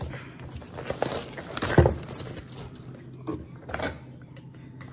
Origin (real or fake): real